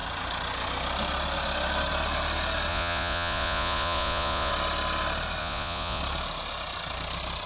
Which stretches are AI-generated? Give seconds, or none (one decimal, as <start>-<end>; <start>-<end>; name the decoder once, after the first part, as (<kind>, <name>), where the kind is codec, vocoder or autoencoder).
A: 2.7-4.5 (vocoder, Vocos); 5.4-6.0